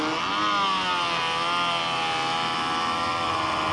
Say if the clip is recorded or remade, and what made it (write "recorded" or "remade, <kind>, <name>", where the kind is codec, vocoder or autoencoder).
recorded